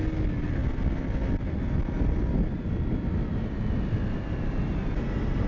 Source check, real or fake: real